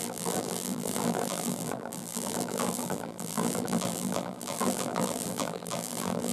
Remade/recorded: remade